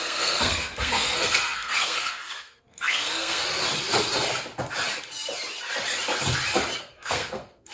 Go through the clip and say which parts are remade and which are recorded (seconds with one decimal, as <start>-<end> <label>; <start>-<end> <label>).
0.0-3.4 remade; 3.4-6.8 recorded; 6.8-7.7 remade